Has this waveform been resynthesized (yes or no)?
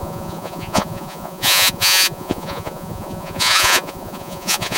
yes